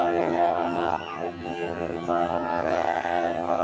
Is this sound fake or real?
fake